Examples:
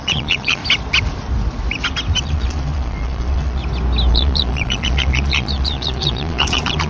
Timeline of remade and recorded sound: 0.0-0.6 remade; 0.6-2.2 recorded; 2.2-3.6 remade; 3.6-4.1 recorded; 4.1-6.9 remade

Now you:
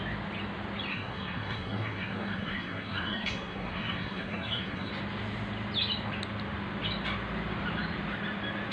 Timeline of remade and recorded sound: 0.0-0.9 recorded; 0.9-4.9 remade; 4.9-8.7 recorded